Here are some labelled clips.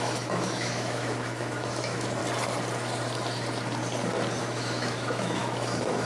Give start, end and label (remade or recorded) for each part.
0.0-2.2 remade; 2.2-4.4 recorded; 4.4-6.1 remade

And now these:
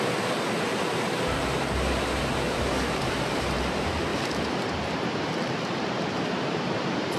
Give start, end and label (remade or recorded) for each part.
0.0-7.2 remade

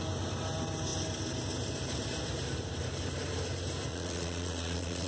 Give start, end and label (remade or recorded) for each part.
0.0-3.9 recorded; 3.9-5.1 remade